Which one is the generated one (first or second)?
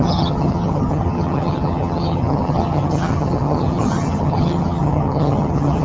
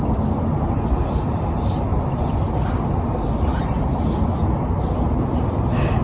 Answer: first